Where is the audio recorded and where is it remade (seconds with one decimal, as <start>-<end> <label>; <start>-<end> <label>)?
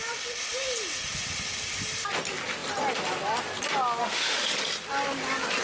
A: 0.0-4.0 recorded; 4.0-4.5 remade; 4.5-5.6 recorded